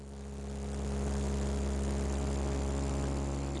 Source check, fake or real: real